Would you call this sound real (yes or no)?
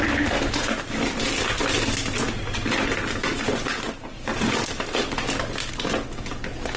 yes